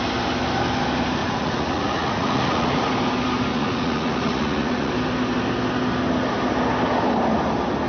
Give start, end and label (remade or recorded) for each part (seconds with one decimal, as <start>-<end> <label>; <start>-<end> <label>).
0.0-1.2 recorded; 1.2-2.8 remade; 2.8-3.5 recorded; 3.5-4.9 remade; 4.9-7.9 recorded